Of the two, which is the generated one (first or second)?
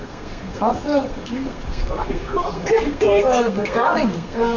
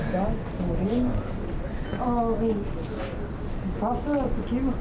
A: first